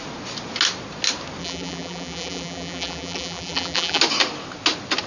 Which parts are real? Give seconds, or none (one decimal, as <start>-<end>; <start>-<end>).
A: 0.0-1.4; 4.0-5.1